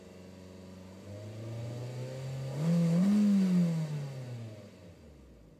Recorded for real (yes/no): yes